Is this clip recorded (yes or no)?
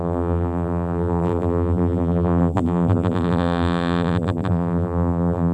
no